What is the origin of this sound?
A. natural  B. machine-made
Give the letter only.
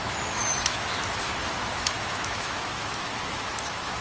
B